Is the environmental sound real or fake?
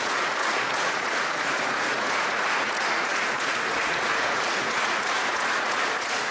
fake